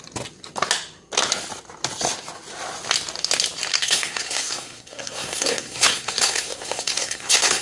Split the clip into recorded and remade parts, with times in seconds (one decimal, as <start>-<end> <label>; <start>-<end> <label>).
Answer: 0.0-3.7 recorded; 3.7-7.6 remade